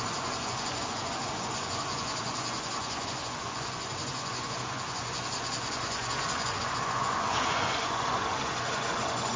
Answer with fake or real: fake